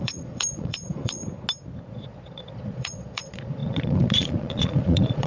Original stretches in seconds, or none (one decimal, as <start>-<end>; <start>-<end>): 1.2-1.9